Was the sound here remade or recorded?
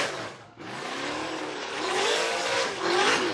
remade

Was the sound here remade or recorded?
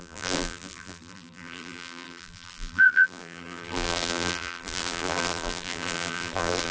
remade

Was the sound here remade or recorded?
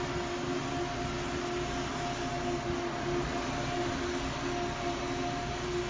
recorded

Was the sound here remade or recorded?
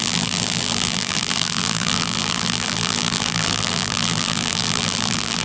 remade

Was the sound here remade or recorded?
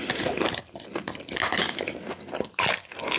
recorded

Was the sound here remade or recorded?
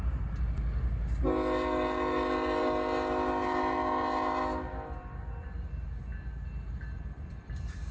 recorded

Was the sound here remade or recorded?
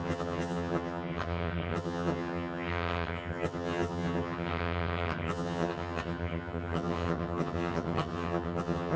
remade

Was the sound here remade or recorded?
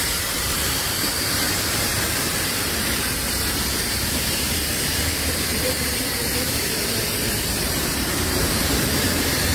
remade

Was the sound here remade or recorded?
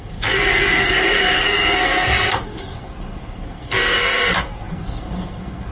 remade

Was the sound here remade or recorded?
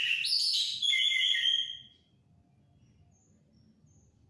recorded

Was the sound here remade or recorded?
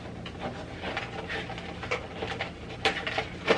recorded